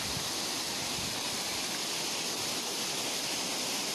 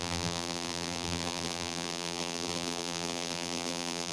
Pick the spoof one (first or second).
second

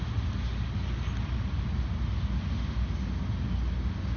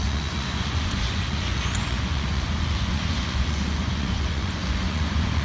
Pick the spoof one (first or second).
second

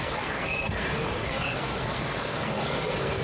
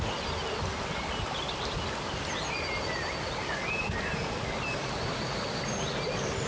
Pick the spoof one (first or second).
first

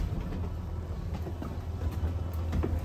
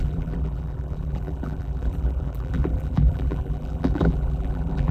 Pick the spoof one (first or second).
second